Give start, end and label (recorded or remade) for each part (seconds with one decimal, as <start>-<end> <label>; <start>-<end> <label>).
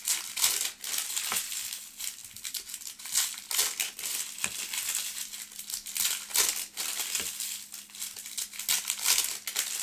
0.0-9.8 recorded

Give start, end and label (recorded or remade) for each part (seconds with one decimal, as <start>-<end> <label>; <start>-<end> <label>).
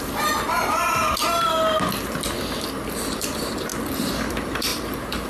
0.0-1.0 remade; 1.0-3.0 recorded; 3.0-3.7 remade; 3.7-4.3 recorded; 4.3-5.3 remade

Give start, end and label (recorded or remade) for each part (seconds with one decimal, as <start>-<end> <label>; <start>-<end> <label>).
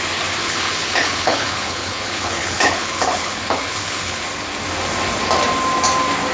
0.0-0.4 recorded; 0.4-4.2 remade; 4.2-6.3 recorded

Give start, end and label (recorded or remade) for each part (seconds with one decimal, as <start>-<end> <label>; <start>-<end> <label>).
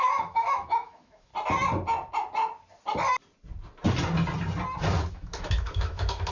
0.0-1.3 remade; 1.3-5.1 recorded; 5.1-6.3 remade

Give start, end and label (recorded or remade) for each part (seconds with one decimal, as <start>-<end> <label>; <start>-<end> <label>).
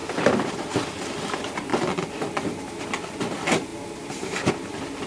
0.0-0.5 recorded; 0.5-3.7 remade; 3.7-4.5 recorded; 4.5-5.1 remade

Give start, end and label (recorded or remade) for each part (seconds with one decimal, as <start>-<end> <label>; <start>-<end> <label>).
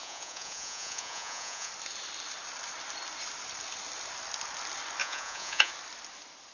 0.0-1.7 remade; 1.7-5.0 recorded; 5.0-5.7 remade; 5.7-6.5 recorded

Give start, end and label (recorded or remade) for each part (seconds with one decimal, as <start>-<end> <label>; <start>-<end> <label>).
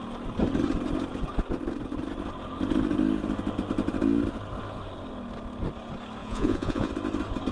0.0-6.2 recorded; 6.2-6.9 remade; 6.9-7.5 recorded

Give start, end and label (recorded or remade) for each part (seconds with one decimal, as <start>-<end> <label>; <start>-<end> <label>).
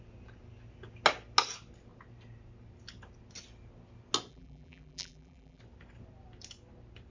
0.0-4.3 recorded; 4.3-5.6 remade; 5.6-7.1 recorded